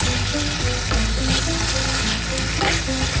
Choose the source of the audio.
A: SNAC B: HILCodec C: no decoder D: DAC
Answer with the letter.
C